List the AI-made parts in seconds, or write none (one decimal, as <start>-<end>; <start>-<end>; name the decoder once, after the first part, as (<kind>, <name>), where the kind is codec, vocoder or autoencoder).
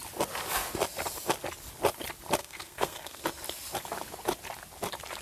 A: 2.4-3.2 (codec, SNAC)